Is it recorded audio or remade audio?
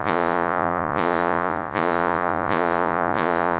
remade